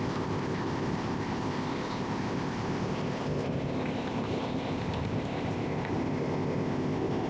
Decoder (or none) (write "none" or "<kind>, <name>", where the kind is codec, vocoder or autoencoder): codec, ZipCodec